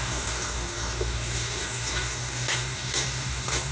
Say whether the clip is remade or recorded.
remade